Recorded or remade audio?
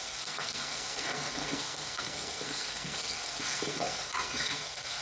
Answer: remade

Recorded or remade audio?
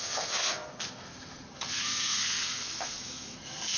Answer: remade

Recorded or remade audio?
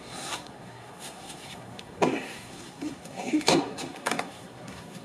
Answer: remade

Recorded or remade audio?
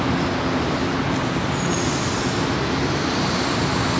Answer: recorded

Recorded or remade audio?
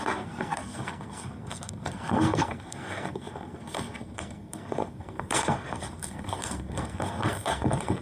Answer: remade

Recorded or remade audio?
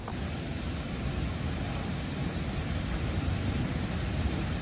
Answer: recorded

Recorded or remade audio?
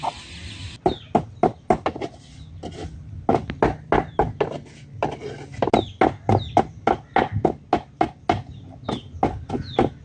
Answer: recorded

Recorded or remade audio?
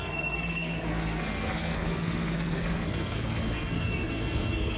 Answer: remade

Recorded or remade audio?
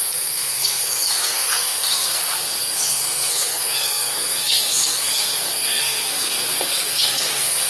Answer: remade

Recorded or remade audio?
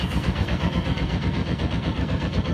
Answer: remade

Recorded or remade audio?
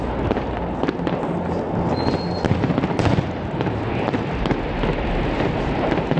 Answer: recorded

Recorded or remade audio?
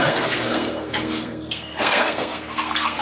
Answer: remade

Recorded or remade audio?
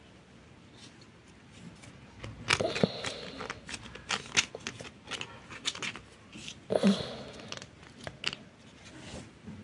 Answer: recorded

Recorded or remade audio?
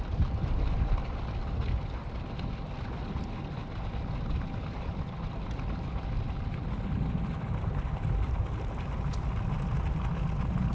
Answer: recorded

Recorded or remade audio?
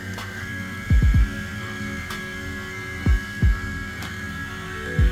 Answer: remade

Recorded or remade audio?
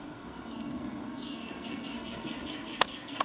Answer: remade